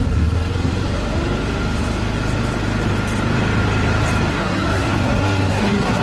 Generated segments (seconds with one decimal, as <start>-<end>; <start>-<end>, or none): 0.0-0.7; 4.3-6.0